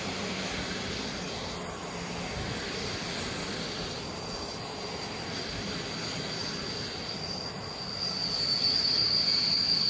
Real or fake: real